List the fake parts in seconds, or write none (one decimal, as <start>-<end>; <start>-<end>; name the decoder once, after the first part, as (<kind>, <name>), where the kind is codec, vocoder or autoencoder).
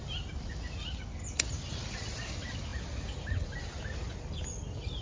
none